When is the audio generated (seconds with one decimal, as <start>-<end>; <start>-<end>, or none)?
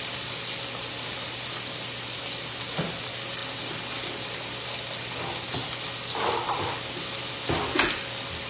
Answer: none